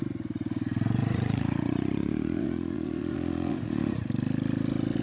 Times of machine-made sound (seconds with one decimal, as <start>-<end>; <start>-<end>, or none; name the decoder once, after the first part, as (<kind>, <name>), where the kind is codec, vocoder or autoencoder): 1.0-4.0 (vocoder, Vocos)